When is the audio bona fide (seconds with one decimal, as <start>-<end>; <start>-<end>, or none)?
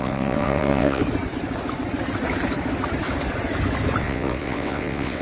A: 1.0-4.0